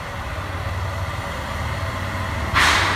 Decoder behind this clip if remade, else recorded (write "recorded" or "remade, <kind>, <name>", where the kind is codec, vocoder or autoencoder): recorded